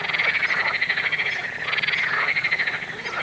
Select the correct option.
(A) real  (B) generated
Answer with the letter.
A